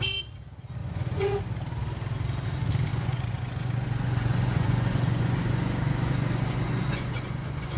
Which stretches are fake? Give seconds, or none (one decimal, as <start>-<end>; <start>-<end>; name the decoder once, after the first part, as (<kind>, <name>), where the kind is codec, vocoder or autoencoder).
0.8-1.4 (vocoder, Vocos); 2.9-7.8